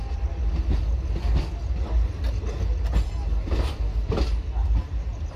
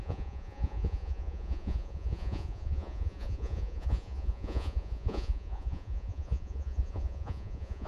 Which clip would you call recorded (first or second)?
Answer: first